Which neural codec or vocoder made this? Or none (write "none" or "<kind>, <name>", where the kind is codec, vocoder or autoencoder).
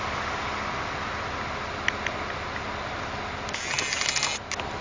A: none